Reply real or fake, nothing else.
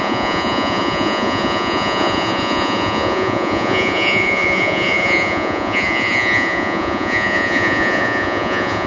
fake